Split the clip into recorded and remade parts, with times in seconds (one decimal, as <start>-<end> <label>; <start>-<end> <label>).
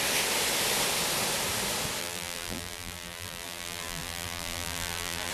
0.0-2.0 recorded; 2.0-5.3 remade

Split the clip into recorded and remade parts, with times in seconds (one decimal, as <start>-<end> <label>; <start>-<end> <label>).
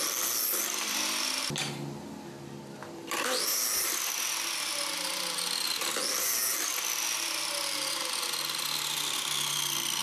0.0-2.8 recorded; 2.8-3.6 remade; 3.6-10.0 recorded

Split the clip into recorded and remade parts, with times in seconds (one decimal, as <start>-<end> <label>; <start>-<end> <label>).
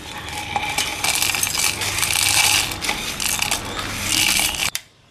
0.0-4.6 recorded; 4.6-5.1 remade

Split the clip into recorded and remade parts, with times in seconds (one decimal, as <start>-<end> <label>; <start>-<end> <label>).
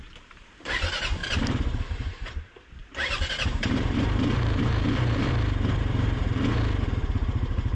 0.0-1.2 remade; 1.2-1.8 recorded; 1.8-7.8 remade